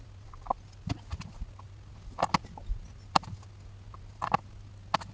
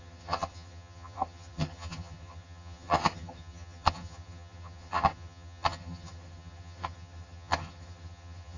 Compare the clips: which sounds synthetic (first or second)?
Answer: second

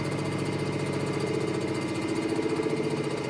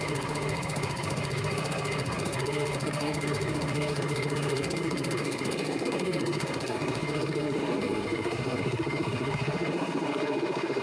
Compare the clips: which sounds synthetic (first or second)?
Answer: second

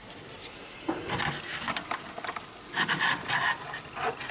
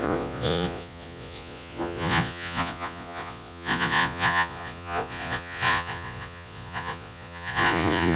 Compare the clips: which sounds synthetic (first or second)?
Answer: second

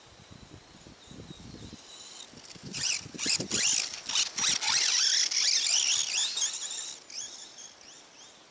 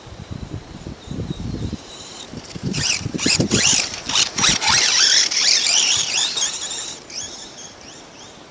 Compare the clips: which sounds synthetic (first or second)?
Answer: second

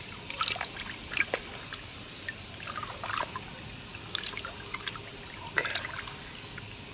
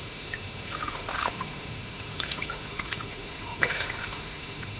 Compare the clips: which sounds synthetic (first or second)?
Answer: second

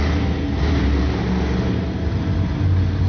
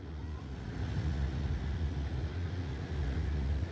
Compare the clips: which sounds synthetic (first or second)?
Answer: second